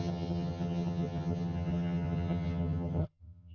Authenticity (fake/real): fake